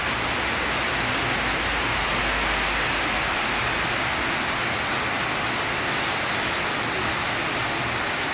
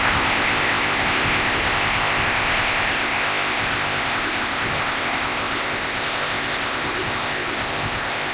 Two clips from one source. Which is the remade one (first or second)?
second